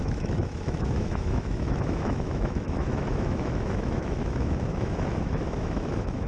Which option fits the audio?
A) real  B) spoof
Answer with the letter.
B